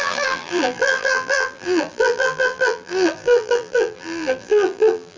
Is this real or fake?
fake